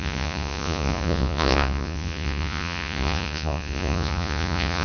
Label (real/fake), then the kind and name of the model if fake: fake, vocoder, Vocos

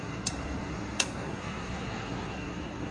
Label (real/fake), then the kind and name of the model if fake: fake, codec, SNAC